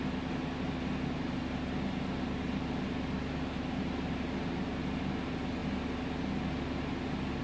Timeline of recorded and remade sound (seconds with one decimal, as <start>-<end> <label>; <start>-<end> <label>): 0.0-7.4 recorded

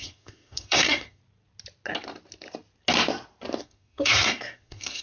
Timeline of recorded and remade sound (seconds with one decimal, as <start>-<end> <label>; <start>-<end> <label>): 0.0-1.2 remade; 1.2-3.6 recorded; 3.6-5.0 remade

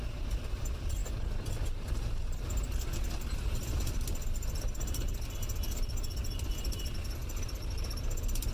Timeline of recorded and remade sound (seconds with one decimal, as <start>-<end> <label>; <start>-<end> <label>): 0.0-8.5 recorded

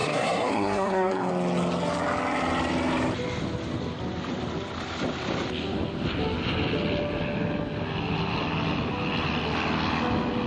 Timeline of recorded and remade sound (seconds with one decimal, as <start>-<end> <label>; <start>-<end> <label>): 0.0-1.3 remade; 1.3-10.5 recorded

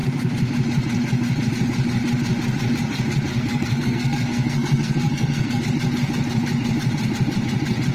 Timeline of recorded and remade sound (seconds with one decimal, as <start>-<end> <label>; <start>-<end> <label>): 0.0-3.3 recorded; 3.3-5.6 remade; 5.6-7.9 recorded

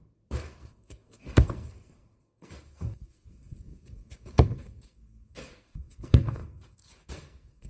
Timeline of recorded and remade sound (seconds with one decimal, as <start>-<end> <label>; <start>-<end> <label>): 0.0-7.7 remade